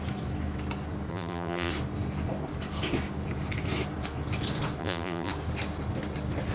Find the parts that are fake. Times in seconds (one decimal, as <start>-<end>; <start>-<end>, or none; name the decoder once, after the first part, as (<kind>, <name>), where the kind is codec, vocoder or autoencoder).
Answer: 1.1-1.7 (vocoder, BigVGAN v2); 4.8-5.3